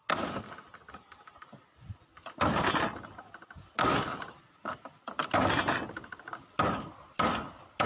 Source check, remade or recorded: recorded